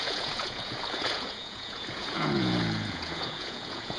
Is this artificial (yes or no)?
yes